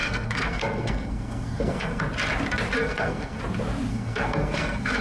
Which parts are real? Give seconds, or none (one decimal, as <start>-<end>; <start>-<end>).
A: 2.0-2.8; 3.4-3.9